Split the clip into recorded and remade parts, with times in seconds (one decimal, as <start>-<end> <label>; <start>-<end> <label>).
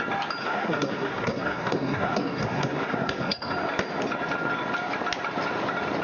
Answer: 0.0-0.4 recorded; 0.4-3.5 remade; 3.5-6.0 recorded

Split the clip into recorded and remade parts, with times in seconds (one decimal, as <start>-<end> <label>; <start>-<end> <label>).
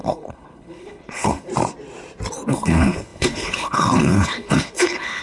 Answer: 0.0-1.5 remade; 1.5-2.5 recorded; 2.5-5.2 remade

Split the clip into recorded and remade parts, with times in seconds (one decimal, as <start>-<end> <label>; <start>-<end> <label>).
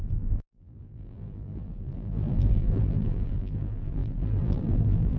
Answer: 0.0-5.2 remade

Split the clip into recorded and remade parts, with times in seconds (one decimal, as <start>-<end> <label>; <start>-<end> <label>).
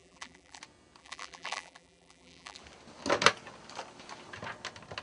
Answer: 0.0-0.6 remade; 0.6-1.0 recorded; 1.0-2.6 remade; 2.6-5.0 recorded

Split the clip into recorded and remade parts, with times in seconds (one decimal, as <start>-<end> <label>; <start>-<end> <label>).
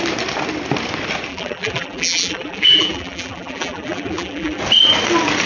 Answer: 0.0-1.3 recorded; 1.3-4.6 remade; 4.6-5.5 recorded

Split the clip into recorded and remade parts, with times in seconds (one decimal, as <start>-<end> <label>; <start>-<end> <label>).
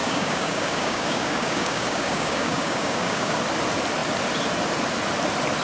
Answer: 0.0-3.4 remade; 3.4-5.6 recorded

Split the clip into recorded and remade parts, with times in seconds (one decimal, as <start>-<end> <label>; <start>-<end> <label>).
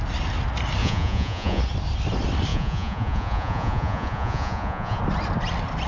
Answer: 0.0-0.8 recorded; 0.8-1.6 remade; 1.6-2.5 recorded; 2.5-5.0 remade; 5.0-5.9 recorded